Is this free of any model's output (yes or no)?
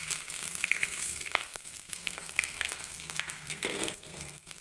no